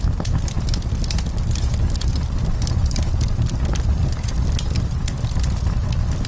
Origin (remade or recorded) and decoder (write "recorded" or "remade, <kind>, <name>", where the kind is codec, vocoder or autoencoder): recorded